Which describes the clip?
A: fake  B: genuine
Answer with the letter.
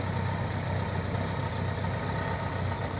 B